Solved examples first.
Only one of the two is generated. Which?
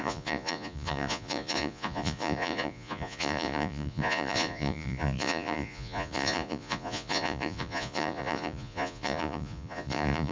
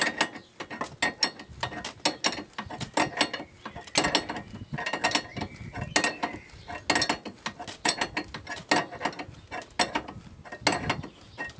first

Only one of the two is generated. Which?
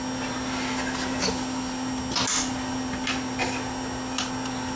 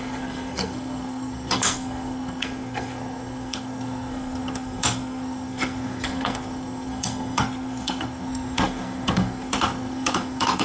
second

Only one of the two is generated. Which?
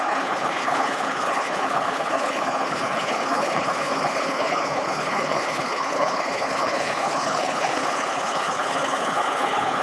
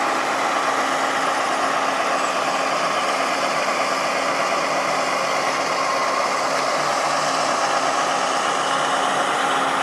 first